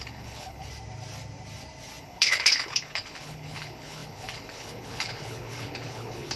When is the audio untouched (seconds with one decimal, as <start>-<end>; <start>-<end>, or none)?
0.7-2.0